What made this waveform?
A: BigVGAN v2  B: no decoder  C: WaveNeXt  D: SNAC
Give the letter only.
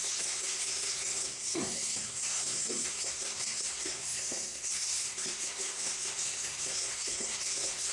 D